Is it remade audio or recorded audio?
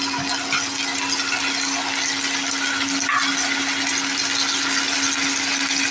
recorded